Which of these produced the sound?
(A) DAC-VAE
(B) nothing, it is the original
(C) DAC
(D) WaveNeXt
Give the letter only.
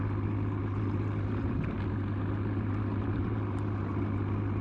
B